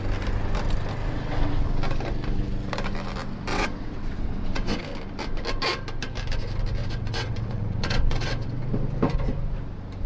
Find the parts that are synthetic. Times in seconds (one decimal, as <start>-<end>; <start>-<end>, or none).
1.0-1.7; 3.5-4.8; 6.8-8.6